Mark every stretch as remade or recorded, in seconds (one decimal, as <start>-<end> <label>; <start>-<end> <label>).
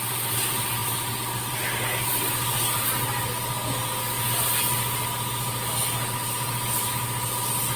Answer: 0.0-7.8 recorded